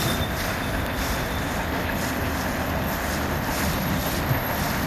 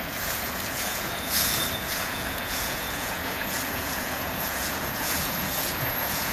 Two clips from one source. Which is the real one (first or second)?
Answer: first